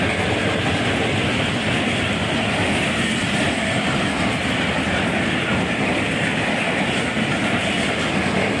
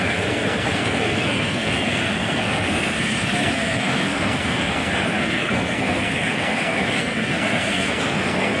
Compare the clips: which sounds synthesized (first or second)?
second